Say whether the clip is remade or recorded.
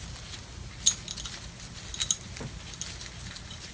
recorded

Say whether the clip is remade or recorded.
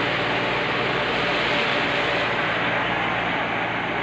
recorded